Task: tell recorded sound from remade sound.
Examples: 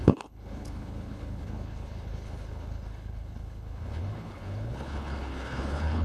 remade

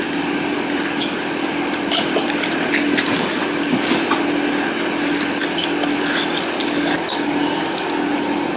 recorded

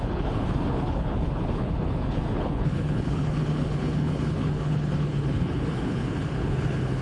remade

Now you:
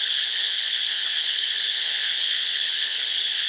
remade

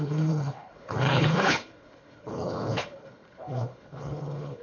remade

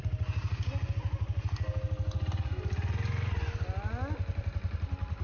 recorded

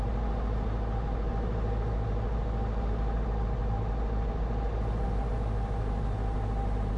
recorded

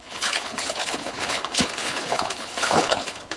remade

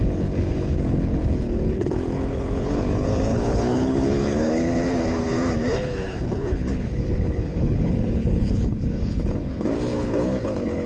remade